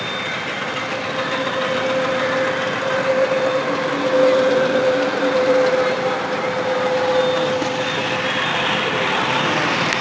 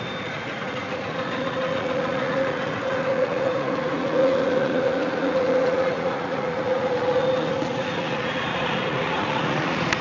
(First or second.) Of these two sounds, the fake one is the second